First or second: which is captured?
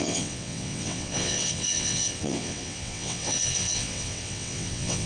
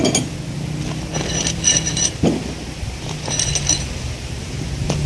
second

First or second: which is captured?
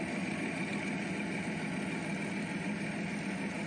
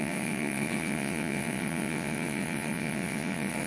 first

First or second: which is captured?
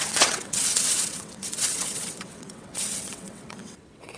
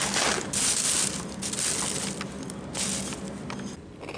second